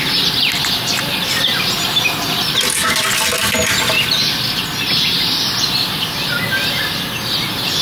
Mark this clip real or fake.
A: real